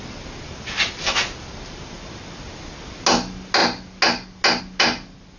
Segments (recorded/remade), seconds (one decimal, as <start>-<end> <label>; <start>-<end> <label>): 0.0-5.4 recorded